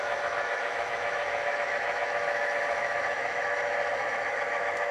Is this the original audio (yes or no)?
no